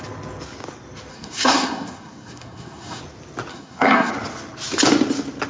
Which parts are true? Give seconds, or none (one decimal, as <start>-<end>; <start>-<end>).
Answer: 0.0-1.1; 3.0-3.5; 4.1-5.5